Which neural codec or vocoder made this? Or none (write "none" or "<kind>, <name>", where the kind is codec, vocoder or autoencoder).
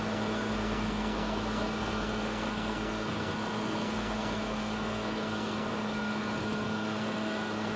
codec, SNAC